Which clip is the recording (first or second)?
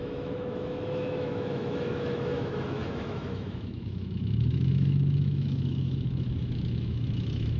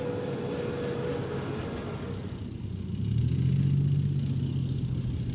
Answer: second